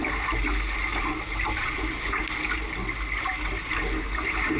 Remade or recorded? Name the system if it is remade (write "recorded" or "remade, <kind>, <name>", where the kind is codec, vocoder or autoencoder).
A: recorded